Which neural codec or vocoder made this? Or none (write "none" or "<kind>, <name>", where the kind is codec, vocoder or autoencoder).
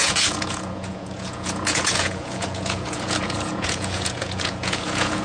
vocoder, Vocos